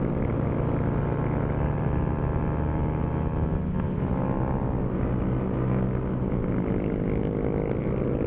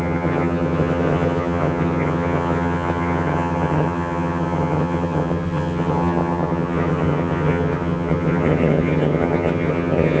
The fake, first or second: second